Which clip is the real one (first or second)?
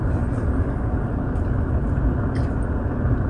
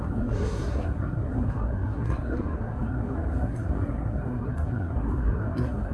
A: first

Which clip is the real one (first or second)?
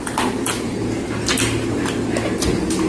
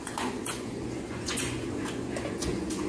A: first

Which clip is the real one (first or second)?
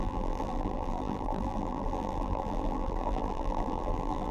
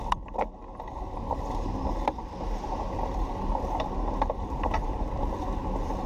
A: second